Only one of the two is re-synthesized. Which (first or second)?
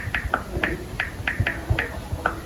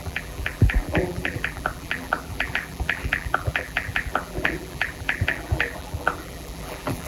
second